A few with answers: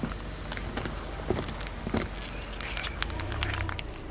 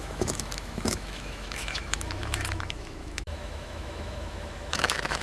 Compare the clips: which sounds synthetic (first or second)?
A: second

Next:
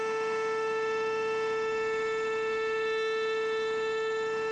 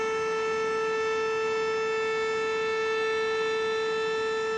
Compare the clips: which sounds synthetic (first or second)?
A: first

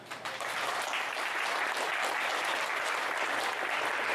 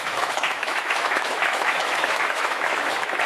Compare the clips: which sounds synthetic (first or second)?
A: second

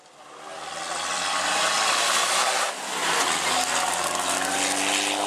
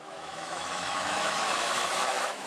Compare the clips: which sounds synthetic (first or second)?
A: second